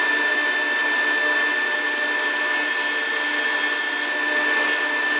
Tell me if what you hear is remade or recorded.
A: recorded